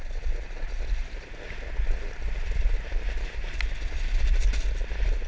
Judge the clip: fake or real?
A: real